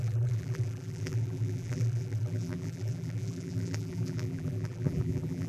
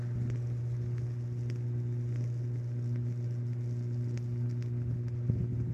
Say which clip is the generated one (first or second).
first